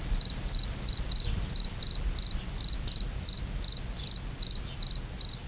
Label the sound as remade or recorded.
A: recorded